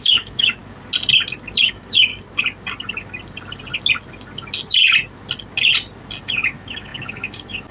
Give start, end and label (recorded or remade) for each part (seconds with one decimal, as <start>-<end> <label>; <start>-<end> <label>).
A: 0.0-0.6 remade; 0.6-1.6 recorded; 1.6-2.1 remade; 2.1-6.2 recorded; 6.2-7.7 remade